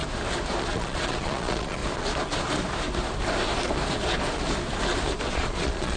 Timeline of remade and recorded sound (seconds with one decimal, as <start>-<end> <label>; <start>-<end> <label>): 0.0-0.6 recorded; 0.6-1.8 remade; 1.8-5.3 recorded; 5.3-6.0 remade